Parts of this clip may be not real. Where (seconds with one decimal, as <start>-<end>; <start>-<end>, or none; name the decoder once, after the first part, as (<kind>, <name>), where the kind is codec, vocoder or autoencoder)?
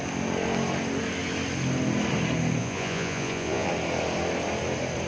2.6-3.7 (vocoder, Vocos)